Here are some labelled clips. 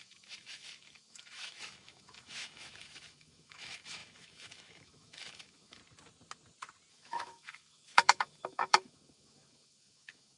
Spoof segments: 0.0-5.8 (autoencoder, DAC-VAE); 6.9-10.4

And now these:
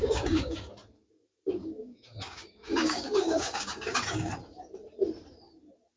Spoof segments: 0.0-0.7 (codec, DAC); 1.8-4.3

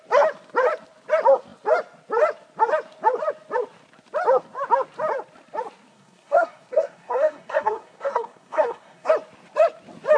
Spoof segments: 5.9-9.1 (codec, SNAC)